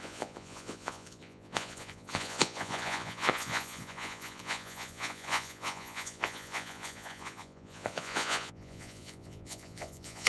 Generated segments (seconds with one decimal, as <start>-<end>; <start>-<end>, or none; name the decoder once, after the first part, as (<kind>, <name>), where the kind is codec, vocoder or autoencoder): 0.0-10.3 (vocoder, Vocos)